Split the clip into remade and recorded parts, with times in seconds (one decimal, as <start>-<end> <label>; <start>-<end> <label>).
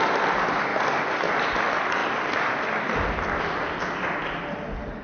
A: 0.0-2.0 recorded; 2.0-3.4 remade; 3.4-5.0 recorded